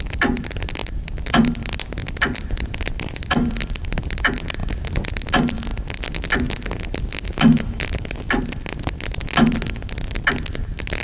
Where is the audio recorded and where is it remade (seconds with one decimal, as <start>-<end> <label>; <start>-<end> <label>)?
0.0-11.0 recorded

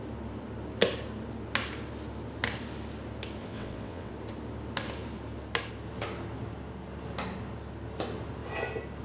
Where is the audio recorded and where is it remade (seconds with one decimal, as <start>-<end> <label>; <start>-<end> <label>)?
0.0-3.4 recorded; 3.4-4.1 remade; 4.1-9.0 recorded

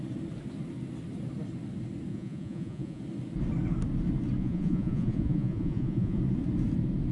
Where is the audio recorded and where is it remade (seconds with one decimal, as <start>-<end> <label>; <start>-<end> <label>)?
0.0-2.1 recorded; 2.1-3.0 remade; 3.0-4.4 recorded; 4.4-6.2 remade; 6.2-7.1 recorded

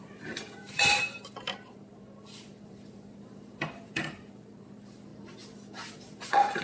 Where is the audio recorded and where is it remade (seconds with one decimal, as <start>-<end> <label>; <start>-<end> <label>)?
0.0-5.1 remade; 5.1-5.9 recorded; 5.9-6.6 remade

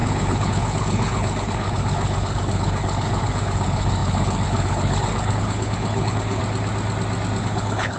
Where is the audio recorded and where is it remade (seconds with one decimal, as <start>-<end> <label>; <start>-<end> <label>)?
0.0-6.4 remade; 6.4-7.4 recorded; 7.4-8.0 remade

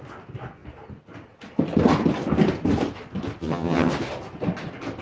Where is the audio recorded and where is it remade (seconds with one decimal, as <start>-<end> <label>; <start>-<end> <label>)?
0.0-3.4 recorded; 3.4-3.9 remade; 3.9-5.0 recorded